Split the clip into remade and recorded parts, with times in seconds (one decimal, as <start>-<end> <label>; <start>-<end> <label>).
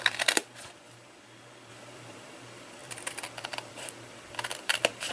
0.0-0.4 remade; 0.4-1.7 recorded; 1.7-5.1 remade